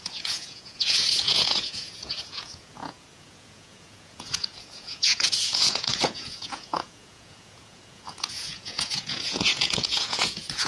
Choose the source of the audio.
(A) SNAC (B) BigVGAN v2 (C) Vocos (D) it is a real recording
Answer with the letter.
C